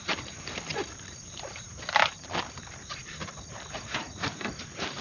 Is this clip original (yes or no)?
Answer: no